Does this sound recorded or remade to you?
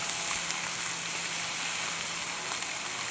recorded